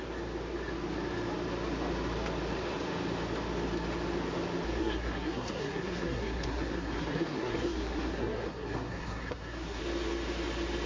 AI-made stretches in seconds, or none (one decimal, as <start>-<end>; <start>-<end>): 4.8-9.8